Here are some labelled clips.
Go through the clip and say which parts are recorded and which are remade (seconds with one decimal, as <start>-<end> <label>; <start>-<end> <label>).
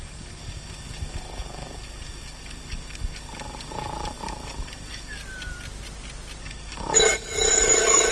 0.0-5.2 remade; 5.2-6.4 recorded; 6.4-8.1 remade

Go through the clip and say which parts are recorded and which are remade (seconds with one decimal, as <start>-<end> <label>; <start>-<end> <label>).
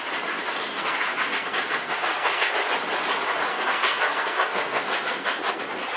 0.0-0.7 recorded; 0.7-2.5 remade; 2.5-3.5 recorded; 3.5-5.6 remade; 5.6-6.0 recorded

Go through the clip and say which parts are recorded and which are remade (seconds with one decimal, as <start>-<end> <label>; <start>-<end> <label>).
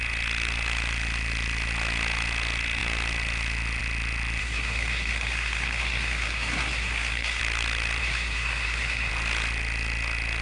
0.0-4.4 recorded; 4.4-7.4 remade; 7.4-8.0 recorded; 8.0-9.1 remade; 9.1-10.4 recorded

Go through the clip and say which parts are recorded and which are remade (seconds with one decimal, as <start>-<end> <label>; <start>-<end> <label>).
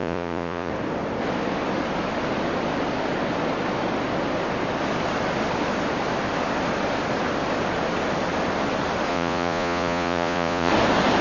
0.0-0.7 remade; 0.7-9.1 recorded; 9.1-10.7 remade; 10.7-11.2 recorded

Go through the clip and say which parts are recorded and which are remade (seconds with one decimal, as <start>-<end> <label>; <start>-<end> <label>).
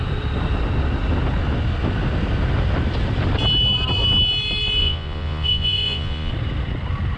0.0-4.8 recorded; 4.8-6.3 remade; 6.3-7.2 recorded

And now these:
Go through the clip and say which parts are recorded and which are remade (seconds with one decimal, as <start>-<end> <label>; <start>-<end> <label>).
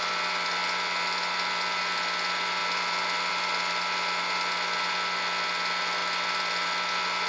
0.0-7.3 recorded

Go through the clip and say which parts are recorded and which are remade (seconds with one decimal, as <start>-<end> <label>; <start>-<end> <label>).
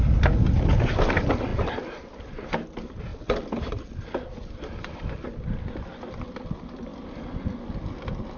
0.0-8.4 recorded